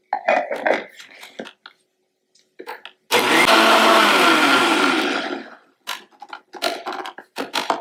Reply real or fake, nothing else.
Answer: real